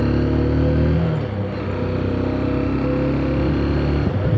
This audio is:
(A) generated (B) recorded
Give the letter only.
B